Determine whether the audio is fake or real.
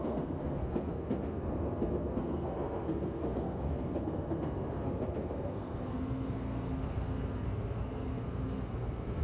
fake